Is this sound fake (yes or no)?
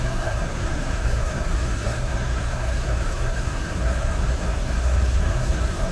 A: yes